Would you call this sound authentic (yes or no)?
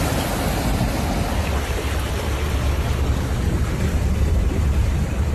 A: no